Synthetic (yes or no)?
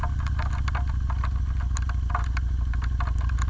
no